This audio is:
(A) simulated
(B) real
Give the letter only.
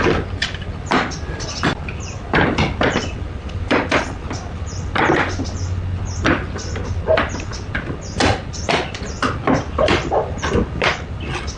B